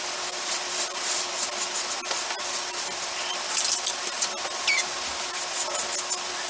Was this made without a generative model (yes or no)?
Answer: yes